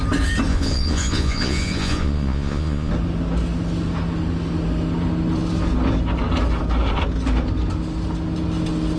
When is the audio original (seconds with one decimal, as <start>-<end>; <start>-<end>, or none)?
0.0-0.5; 2.9-9.0